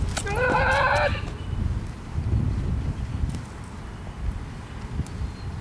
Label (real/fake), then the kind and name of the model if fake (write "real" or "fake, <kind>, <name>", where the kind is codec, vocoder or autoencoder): real